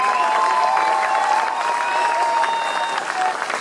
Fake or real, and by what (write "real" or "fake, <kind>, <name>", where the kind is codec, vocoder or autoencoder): real